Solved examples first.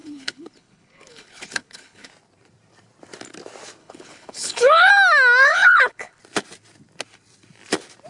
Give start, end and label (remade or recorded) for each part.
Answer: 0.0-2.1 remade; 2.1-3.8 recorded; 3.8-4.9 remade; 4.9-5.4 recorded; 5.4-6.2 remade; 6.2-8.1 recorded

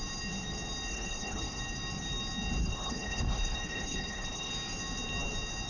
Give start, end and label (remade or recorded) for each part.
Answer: 0.0-0.9 recorded; 0.9-1.6 remade; 1.6-2.6 recorded; 2.6-4.5 remade; 4.5-5.7 recorded

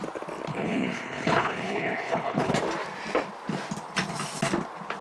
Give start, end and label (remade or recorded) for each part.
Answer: 0.0-0.5 recorded; 0.5-2.5 remade; 2.5-5.0 recorded